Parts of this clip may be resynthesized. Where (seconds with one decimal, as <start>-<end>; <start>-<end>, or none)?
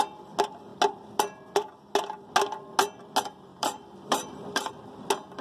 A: 3.5-4.7